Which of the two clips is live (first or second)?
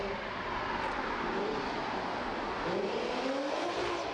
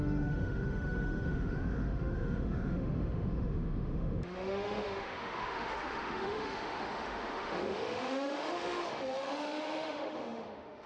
first